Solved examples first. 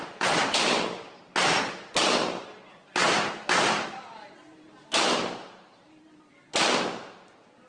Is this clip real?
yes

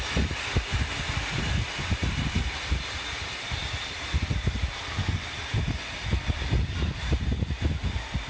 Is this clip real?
yes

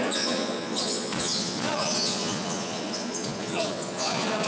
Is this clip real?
no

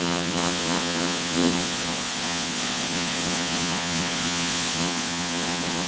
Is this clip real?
no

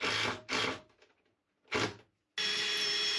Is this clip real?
yes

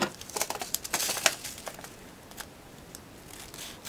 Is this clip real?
yes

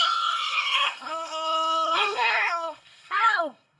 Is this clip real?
no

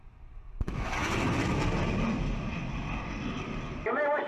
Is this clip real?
yes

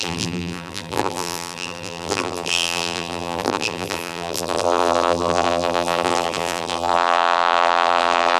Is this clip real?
no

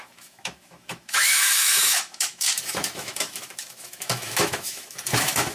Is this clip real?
no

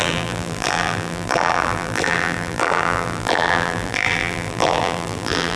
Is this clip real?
no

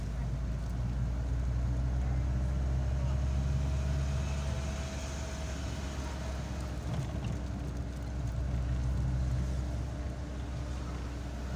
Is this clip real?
yes